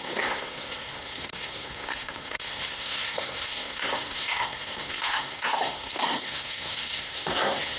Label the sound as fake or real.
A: fake